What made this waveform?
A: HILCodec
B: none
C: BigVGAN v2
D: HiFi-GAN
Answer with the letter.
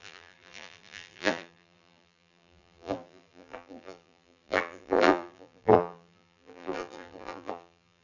C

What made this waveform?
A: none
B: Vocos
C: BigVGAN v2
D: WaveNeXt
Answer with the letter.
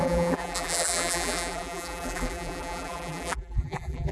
C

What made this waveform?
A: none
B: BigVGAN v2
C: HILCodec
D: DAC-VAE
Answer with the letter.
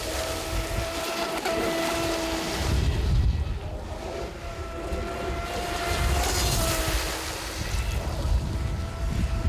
A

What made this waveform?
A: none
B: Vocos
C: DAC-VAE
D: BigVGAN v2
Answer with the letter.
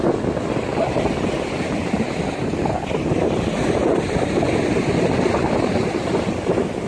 D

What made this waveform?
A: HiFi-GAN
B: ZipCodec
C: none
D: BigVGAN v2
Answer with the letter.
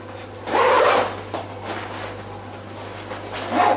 C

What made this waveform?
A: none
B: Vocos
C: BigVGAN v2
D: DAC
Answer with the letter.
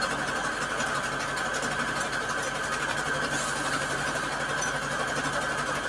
A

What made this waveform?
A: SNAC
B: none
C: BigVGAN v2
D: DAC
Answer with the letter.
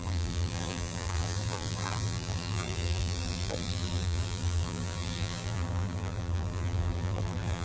C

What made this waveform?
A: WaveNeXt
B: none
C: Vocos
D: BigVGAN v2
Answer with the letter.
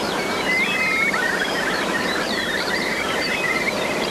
D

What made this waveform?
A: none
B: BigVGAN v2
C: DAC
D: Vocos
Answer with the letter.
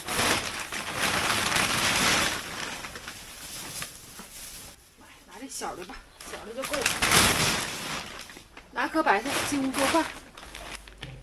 A